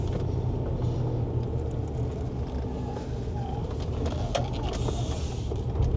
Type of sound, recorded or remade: recorded